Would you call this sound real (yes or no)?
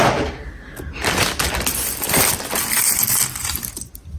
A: yes